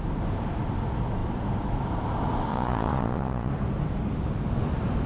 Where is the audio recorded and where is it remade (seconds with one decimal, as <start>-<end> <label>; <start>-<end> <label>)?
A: 0.0-2.5 recorded; 2.5-3.5 remade; 3.5-5.1 recorded